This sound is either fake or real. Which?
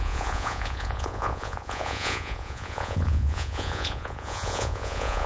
fake